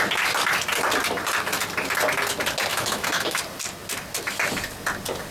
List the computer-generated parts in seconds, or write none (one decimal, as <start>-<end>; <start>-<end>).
2.7-3.4